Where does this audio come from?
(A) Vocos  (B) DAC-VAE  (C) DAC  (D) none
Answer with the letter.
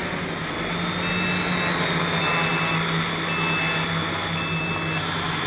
D